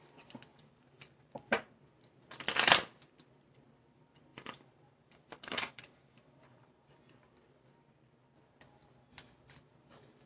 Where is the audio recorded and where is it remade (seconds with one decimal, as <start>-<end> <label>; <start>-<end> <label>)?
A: 0.0-0.5 recorded; 0.5-1.7 remade; 1.7-4.3 recorded; 4.3-7.0 remade; 7.0-10.3 recorded